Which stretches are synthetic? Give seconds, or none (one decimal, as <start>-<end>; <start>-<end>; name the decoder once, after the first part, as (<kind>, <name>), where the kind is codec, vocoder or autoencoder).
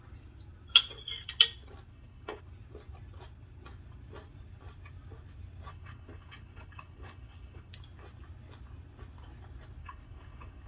1.9-2.4 (codec, HILCodec); 5.7-7.7; 9.8-10.7